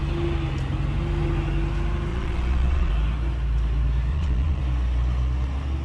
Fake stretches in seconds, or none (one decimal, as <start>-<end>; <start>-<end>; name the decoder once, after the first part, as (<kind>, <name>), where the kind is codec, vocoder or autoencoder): 2.1-2.9 (vocoder, Vocos); 4.1-4.6

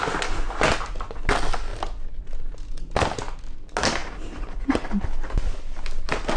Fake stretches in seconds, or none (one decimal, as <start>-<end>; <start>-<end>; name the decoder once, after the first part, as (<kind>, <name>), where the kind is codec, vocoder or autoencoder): none

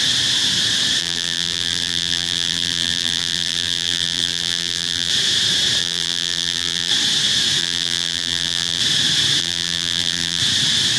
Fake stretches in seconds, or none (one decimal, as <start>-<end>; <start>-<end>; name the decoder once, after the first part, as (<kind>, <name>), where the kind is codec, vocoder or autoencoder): 1.0-5.1 (vocoder, BigVGAN v2); 5.8-6.9; 7.6-8.8; 9.4-10.4